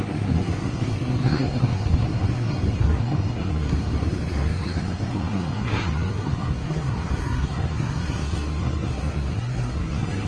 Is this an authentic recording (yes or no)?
no